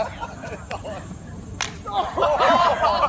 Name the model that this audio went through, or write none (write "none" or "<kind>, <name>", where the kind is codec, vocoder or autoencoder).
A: none